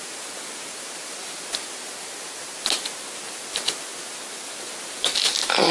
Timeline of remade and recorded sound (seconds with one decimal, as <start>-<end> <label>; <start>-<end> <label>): 0.0-5.7 recorded